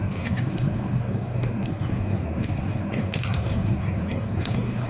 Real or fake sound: fake